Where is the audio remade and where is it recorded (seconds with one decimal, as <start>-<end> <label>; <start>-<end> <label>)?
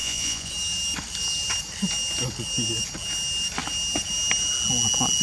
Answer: 0.0-0.5 remade; 0.5-5.2 recorded